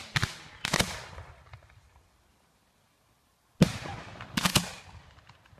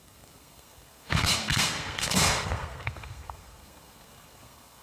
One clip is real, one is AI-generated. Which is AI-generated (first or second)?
second